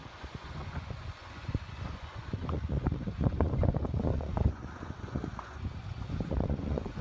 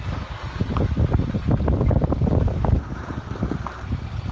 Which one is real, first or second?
second